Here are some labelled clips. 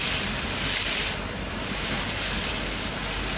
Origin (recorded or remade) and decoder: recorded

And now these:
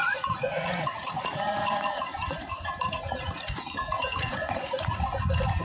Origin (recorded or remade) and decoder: remade, vocoder, Vocos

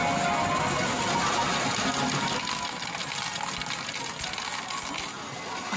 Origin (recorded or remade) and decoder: recorded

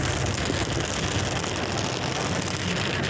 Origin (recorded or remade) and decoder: recorded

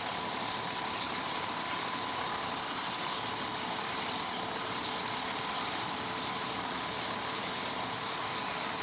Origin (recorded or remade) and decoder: remade, vocoder, BigVGAN v2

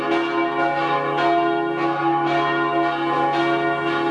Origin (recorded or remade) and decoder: recorded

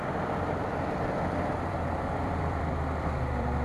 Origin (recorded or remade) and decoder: remade, vocoder, BigVGAN v2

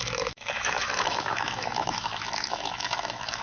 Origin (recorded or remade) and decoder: remade, autoencoder, DAC-VAE